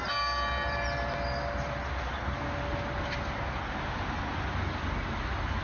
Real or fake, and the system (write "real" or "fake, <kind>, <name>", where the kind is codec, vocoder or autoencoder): real